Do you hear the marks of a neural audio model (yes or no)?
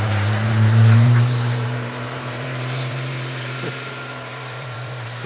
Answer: yes